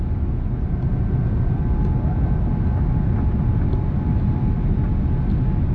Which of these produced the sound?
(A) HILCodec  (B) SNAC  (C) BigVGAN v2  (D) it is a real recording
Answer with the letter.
D